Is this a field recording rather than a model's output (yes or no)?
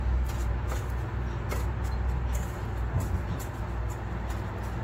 yes